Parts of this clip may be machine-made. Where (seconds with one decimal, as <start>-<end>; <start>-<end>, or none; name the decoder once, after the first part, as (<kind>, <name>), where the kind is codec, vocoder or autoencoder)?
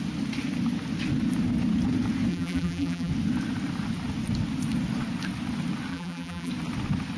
2.3-3.1 (vocoder, BigVGAN v2); 5.9-6.5